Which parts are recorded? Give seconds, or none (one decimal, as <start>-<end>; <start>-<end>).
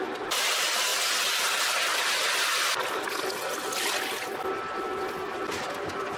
0.0-6.2